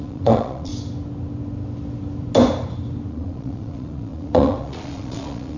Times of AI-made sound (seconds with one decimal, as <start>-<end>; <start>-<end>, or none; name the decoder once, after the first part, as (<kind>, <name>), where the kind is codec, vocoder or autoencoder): 0.0-0.7 (vocoder, Vocos); 3.1-5.6